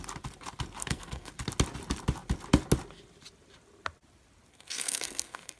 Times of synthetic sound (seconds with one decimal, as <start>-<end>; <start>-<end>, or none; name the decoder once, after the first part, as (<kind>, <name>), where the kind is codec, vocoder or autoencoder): 0.8-1.3 (codec, SNAC); 4.5-5.6